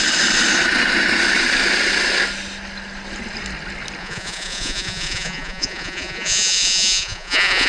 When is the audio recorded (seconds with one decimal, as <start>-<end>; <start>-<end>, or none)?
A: 0.0-4.0